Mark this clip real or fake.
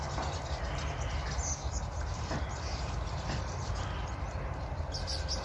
real